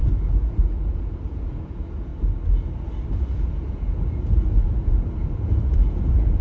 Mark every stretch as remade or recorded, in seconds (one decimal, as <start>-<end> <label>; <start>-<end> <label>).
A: 0.0-2.1 remade; 2.1-3.1 recorded; 3.1-6.4 remade